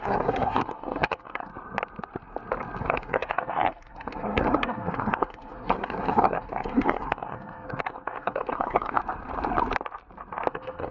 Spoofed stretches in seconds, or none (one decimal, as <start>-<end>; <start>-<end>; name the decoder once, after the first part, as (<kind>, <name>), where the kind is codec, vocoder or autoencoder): 0.0-1.5 (codec, SNAC); 2.8-9.0; 10.5-10.9